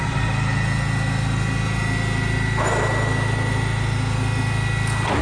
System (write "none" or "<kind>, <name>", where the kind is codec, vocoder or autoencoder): none